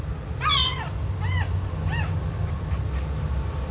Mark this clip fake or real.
real